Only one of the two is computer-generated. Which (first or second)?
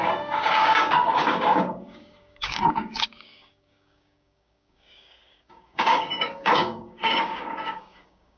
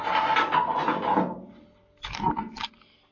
first